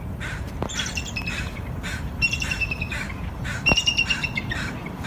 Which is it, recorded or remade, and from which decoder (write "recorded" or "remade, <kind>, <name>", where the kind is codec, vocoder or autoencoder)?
remade, vocoder, BigVGAN v2